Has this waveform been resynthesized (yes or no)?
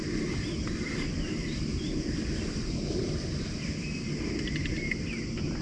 no